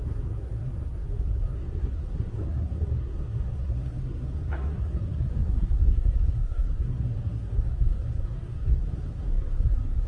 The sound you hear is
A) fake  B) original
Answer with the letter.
A